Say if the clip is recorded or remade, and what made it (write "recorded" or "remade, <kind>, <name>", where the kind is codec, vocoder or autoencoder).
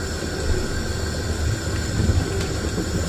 recorded